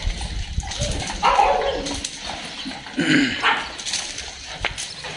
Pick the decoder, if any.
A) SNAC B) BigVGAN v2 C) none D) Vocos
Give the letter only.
C